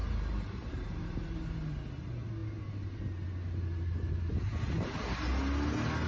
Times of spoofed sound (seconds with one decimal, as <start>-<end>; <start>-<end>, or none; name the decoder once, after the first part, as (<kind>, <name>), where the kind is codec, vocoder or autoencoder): 0.0-1.8 (vocoder, BigVGAN v2)